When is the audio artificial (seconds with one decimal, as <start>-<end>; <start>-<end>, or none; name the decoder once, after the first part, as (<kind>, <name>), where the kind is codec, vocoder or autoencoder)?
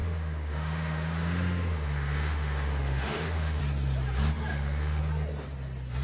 0.0-3.6 (autoencoder, DAC-VAE); 4.5-5.0